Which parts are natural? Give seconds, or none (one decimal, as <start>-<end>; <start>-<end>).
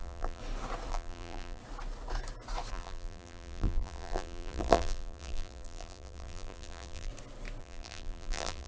0.4-0.9; 1.6-2.7; 7.1-7.6